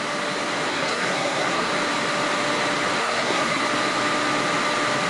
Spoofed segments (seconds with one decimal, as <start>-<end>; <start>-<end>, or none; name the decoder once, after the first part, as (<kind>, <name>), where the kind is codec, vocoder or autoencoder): 0.7-1.7 (codec, SNAC); 3.0-3.6